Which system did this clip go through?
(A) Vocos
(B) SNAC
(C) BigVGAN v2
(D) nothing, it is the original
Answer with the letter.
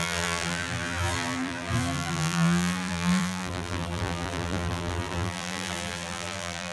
C